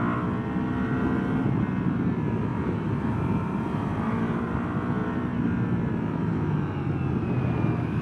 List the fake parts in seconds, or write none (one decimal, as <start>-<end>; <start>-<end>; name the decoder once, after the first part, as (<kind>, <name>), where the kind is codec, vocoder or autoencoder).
2.5-4.5 (vocoder, BigVGAN v2)